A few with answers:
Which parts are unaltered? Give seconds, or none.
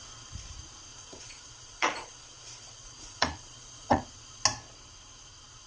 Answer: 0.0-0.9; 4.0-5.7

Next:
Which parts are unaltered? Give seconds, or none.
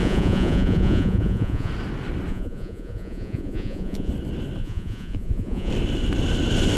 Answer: 1.7-2.3; 4.1-4.6; 5.7-6.8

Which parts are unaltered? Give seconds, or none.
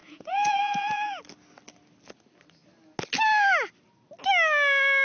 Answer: 1.2-5.0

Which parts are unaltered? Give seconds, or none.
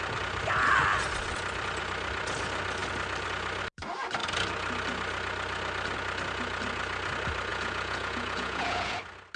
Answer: 0.0-7.5; 9.0-9.4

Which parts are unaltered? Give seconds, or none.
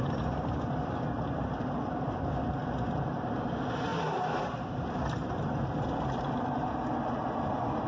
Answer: 0.0-7.9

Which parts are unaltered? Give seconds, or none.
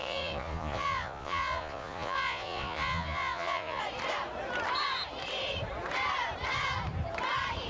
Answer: 3.8-7.7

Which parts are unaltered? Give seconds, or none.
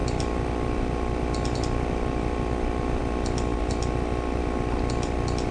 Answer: 0.0-5.5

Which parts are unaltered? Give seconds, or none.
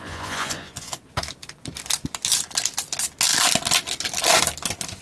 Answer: 1.0-5.0